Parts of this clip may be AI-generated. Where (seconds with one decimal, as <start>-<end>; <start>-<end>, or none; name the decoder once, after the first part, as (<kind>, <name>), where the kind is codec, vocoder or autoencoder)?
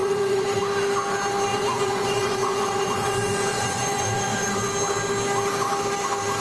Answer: 0.0-0.6 (vocoder, Vocos); 1.5-4.7